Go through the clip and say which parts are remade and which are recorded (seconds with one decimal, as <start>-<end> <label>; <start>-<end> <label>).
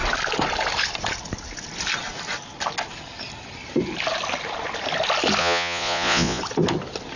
0.0-5.4 recorded; 5.4-6.4 remade; 6.4-7.2 recorded